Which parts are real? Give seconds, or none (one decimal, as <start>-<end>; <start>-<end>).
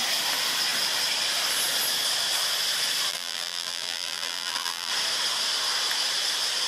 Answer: 0.0-3.1; 4.9-6.7